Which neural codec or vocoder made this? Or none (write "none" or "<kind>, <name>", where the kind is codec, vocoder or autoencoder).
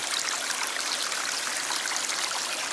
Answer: none